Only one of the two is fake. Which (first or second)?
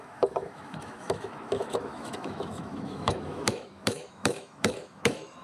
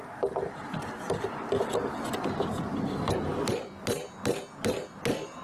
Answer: first